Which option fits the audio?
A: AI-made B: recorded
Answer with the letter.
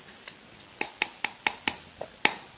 B